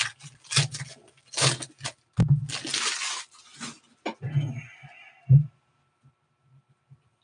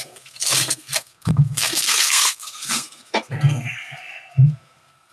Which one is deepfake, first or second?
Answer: second